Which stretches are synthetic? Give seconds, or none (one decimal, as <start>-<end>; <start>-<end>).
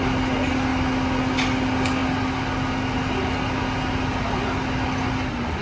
none